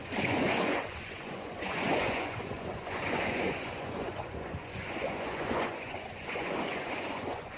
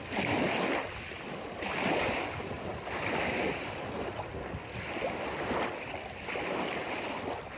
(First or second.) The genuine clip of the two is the second